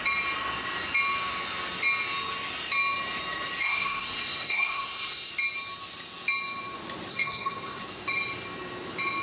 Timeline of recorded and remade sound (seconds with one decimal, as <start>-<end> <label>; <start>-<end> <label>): 0.0-3.6 recorded; 3.6-5.3 remade; 5.3-7.1 recorded; 7.1-7.8 remade; 7.8-9.2 recorded